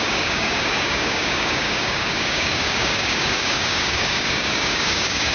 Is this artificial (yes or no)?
yes